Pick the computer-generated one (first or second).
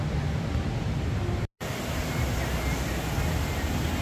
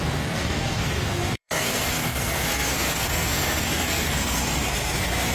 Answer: second